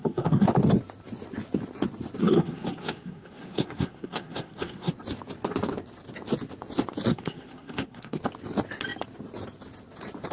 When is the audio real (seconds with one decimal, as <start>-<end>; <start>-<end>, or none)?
0.5-2.2; 4.9-7.1; 8.2-10.3